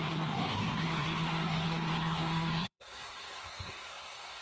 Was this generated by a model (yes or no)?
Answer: yes